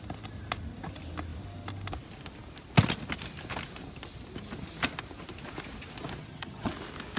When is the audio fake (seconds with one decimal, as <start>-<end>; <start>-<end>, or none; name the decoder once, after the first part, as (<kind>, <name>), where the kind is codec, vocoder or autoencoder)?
6.2-6.7 (vocoder, HiFi-GAN)